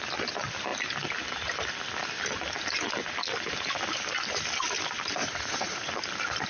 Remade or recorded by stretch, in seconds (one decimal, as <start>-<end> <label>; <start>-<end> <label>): 0.0-5.2 recorded; 5.2-5.9 remade; 5.9-6.5 recorded